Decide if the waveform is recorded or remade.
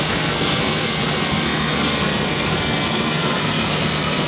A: remade